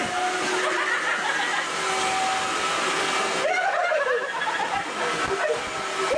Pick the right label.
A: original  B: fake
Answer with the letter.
A